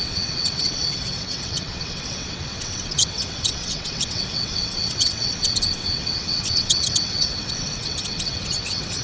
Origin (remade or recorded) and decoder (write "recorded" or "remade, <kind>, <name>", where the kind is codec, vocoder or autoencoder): remade, vocoder, WaveNeXt